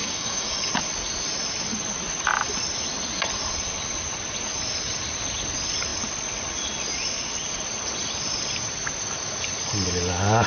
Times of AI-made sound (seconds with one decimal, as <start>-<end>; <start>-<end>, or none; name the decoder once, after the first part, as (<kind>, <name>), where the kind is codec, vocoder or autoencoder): 0.0-0.7 (codec, DAC)